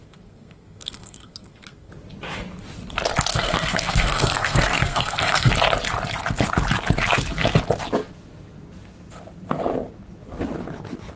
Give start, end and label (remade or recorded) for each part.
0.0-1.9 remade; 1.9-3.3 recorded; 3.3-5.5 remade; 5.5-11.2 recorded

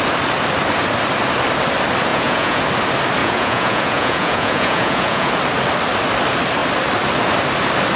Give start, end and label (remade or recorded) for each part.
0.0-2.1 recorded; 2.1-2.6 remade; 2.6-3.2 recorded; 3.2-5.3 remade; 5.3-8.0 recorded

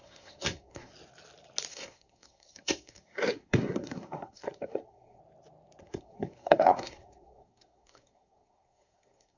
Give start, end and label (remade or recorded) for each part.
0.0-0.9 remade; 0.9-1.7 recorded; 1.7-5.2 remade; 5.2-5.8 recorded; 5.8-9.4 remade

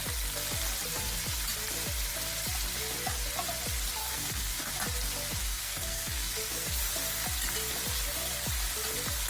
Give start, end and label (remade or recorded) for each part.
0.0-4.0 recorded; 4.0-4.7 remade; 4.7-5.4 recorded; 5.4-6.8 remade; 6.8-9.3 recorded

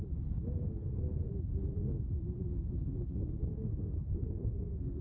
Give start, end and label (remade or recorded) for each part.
0.0-0.8 recorded; 0.8-1.3 remade; 1.3-3.2 recorded; 3.2-5.0 remade